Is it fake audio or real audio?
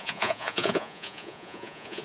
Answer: fake